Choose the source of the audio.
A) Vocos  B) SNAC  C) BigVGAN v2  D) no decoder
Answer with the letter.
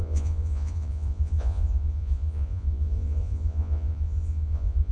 A